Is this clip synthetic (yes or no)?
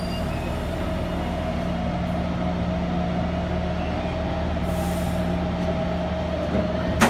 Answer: no